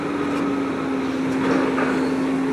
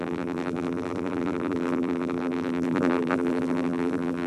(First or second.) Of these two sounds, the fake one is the second